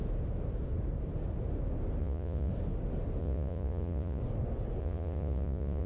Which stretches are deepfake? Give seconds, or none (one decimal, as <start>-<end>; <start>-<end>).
2.0-2.5; 3.2-4.2; 4.8-5.9